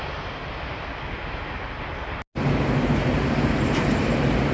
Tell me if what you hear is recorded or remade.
recorded